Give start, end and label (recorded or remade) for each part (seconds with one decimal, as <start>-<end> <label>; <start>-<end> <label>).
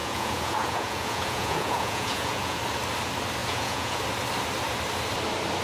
0.0-2.6 remade; 2.6-3.4 recorded; 3.4-4.0 remade; 4.0-5.6 recorded